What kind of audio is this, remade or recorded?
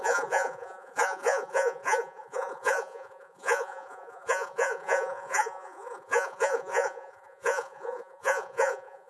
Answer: remade